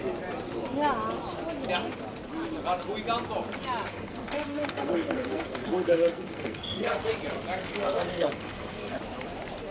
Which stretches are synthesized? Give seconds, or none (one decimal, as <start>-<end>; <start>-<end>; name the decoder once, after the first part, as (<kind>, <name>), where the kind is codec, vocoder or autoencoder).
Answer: 3.9-7.1 (codec, SNAC); 7.6-9.0

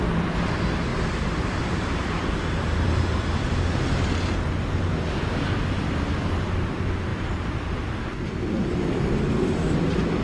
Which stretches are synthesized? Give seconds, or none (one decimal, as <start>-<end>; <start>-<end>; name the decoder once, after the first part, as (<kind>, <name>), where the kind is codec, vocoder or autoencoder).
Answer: 0.9-3.4 (vocoder, BigVGAN v2); 7.1-10.2

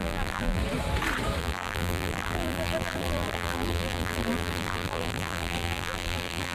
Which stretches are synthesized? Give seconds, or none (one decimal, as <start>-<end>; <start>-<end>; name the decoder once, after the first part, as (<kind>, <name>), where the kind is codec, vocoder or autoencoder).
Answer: 0.0-0.6 (vocoder, BigVGAN v2); 1.4-6.5